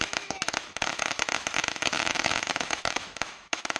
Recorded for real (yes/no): no